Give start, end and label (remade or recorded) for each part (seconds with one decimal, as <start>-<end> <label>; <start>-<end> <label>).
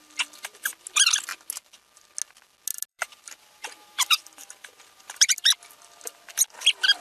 0.0-2.9 recorded; 2.9-5.3 remade; 5.3-7.0 recorded